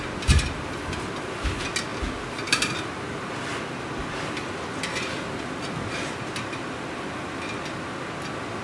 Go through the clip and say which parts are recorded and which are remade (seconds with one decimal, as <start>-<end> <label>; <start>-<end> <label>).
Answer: 0.0-1.9 recorded; 1.9-2.9 remade; 2.9-8.6 recorded